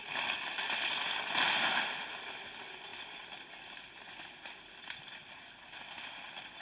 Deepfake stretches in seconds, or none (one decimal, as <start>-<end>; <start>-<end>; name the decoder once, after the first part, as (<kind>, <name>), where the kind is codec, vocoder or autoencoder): none